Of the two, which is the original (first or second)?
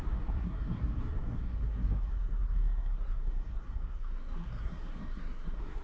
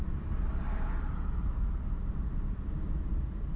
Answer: second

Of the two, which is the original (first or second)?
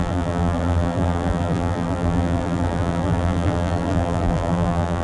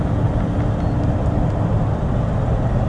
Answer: second